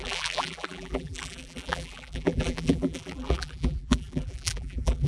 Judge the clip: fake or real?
fake